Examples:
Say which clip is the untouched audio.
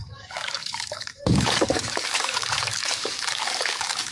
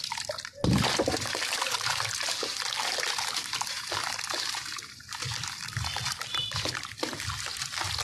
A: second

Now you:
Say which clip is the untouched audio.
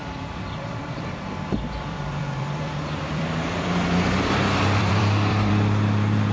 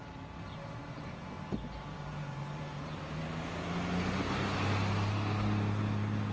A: second